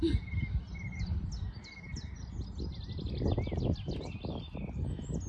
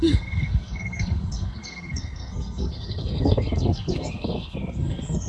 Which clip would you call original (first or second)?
first